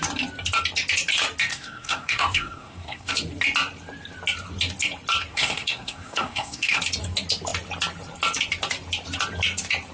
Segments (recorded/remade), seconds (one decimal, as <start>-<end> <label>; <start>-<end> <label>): 0.0-1.5 recorded; 1.5-3.1 remade; 3.1-5.3 recorded; 5.3-6.8 remade; 6.8-9.9 recorded